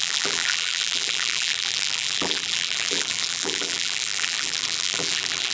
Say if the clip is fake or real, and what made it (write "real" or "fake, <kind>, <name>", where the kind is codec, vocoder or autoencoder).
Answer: fake, vocoder, BigVGAN v2